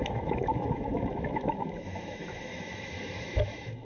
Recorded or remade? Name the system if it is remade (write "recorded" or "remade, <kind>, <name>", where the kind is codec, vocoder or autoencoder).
remade, autoencoder, DAC-VAE